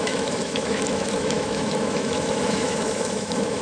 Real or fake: fake